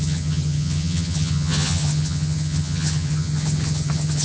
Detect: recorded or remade remade